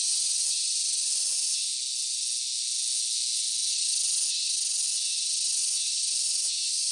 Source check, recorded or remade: recorded